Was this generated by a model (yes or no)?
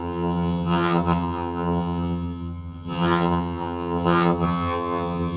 yes